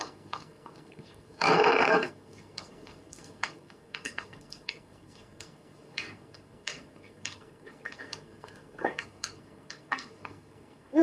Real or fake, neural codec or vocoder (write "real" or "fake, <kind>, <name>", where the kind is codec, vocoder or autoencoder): fake, codec, SNAC